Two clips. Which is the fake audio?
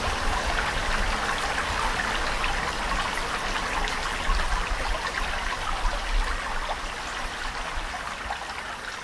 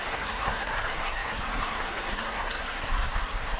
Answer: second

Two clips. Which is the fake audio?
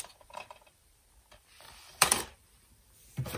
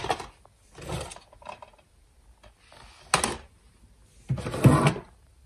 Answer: first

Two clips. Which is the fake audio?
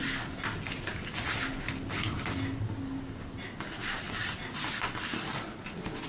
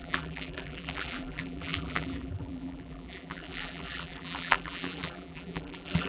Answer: second